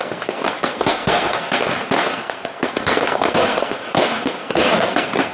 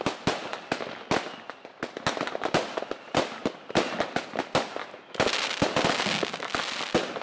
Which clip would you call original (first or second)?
second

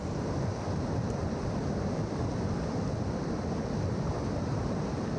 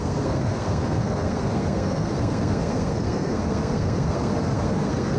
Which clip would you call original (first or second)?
first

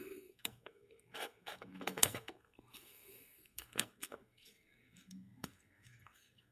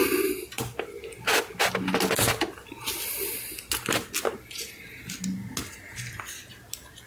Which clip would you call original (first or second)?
second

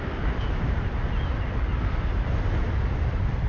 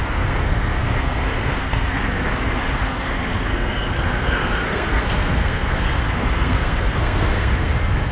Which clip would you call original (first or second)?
first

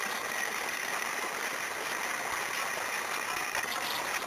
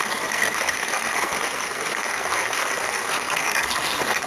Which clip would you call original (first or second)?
first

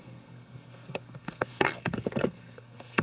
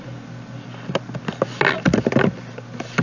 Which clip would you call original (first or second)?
second